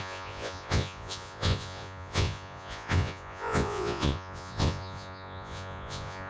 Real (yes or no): no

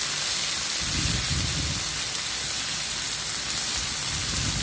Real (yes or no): yes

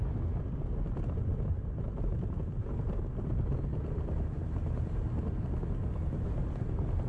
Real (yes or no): yes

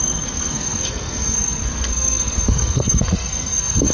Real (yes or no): no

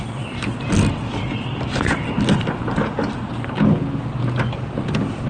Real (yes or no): yes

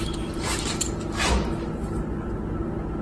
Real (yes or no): yes